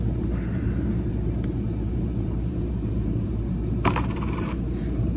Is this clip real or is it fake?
fake